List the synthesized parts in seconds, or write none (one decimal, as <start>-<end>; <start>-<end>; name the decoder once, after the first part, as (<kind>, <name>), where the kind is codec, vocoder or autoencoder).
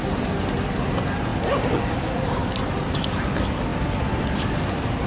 none